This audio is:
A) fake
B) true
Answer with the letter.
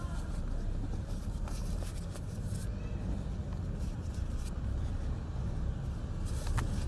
B